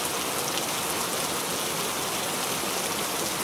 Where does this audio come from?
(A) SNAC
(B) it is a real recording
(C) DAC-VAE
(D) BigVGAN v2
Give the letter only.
B